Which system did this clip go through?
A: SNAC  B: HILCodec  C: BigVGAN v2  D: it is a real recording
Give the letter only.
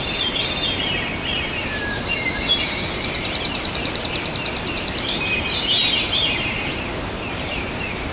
C